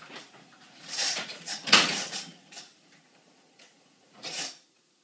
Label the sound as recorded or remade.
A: remade